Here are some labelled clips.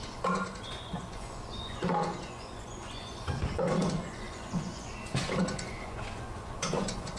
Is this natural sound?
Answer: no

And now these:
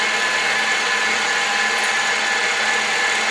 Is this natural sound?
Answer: yes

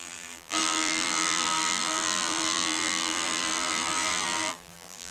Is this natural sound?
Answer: no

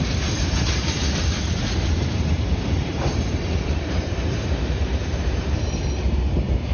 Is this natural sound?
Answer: no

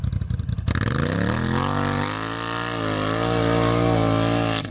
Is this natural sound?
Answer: yes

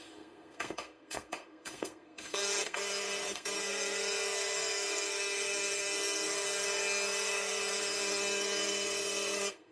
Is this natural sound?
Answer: no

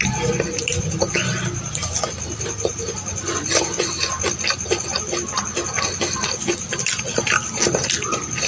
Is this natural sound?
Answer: yes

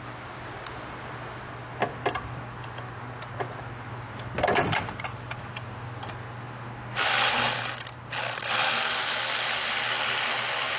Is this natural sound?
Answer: yes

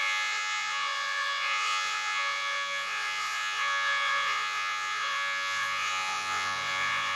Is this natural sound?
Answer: no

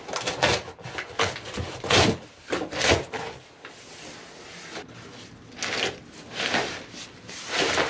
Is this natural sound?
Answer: yes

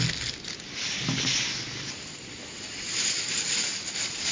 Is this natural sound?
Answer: yes